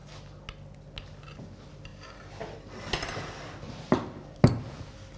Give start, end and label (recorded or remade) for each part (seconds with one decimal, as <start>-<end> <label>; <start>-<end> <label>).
0.0-5.2 recorded